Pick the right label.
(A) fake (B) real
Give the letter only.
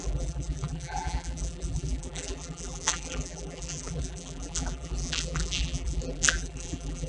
A